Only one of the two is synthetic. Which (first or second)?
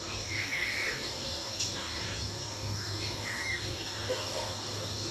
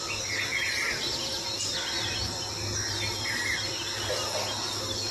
first